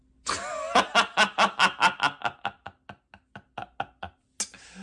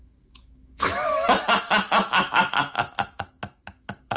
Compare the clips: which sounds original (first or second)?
first